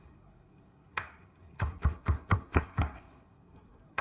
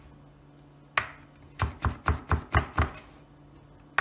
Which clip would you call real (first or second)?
second